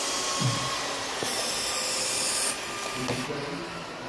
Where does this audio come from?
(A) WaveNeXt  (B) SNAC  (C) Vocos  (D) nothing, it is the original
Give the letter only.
D